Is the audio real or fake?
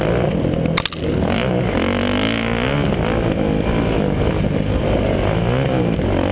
real